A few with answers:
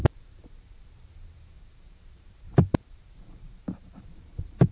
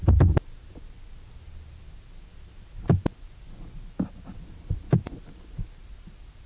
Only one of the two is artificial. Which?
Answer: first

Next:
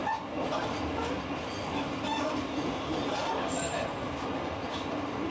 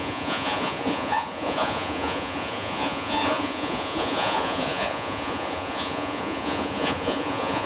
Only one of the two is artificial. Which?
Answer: second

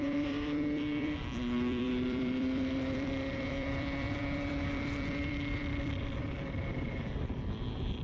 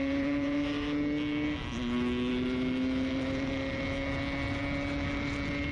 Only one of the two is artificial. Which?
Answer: first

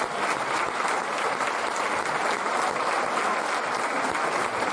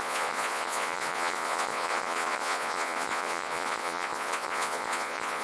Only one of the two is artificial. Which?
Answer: second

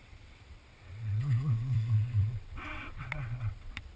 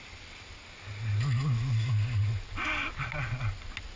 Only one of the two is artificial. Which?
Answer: first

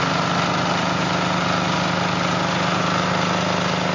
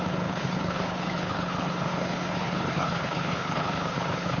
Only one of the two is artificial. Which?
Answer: second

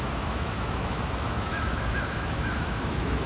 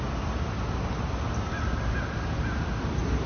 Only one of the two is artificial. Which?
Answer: first